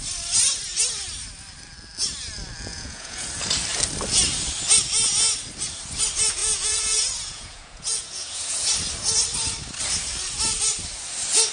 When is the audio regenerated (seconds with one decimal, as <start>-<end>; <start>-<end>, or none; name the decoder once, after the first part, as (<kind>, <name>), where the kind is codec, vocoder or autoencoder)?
2.7-3.3 (vocoder, Vocos); 6.4-8.7